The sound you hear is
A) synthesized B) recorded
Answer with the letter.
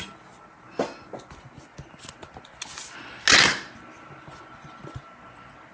B